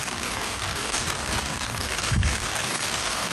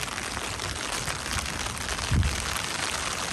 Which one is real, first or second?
second